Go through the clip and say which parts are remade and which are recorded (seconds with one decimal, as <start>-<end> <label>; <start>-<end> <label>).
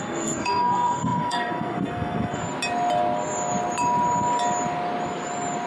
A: 0.0-2.4 remade; 2.4-5.7 recorded